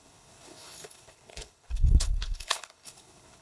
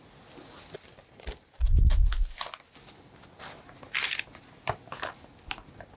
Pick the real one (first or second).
second